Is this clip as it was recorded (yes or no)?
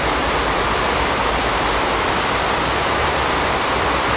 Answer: yes